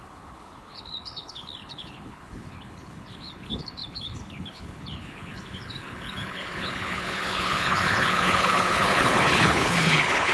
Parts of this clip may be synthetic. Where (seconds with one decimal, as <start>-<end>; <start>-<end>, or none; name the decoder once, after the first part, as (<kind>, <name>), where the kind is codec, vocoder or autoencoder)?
0.0-10.3 (codec, HILCodec)

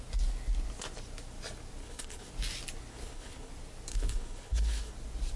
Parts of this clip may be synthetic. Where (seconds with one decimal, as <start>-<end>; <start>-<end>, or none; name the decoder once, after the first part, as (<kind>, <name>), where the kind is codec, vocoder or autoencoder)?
1.8-2.3 (codec, HILCodec); 2.9-3.5; 3.9-4.9

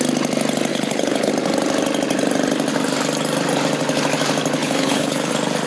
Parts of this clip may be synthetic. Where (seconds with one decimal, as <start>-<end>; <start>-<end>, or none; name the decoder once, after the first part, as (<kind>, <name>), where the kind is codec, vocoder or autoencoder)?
0.7-1.3 (codec, HILCodec); 4.6-5.3